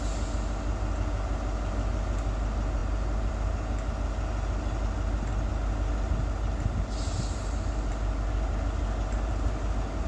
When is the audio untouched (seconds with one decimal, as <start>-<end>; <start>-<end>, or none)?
0.0-10.1